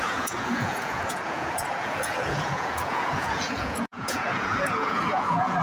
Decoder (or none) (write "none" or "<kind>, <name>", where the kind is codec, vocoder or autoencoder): vocoder, Vocos